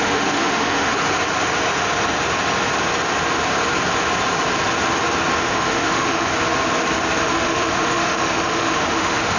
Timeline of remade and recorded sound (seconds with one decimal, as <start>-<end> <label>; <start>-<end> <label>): 0.0-1.0 remade; 1.0-5.4 recorded; 5.4-6.3 remade; 6.3-7.2 recorded; 7.2-9.4 remade